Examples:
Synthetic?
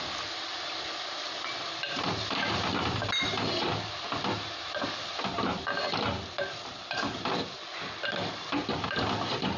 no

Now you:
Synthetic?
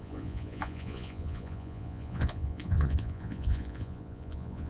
yes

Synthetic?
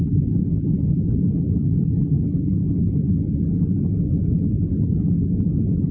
no